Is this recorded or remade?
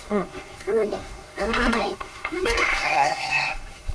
remade